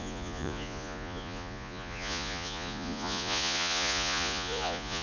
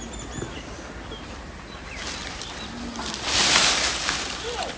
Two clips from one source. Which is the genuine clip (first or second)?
second